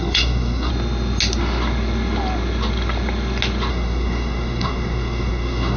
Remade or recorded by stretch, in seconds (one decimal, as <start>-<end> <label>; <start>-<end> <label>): 0.0-0.7 remade; 0.7-3.7 recorded; 3.7-5.8 remade